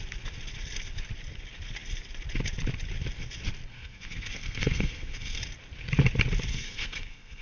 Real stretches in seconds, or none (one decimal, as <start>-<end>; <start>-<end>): 0.0-3.7; 5.4-6.5